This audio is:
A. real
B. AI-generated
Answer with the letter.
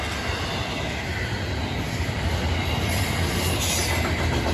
A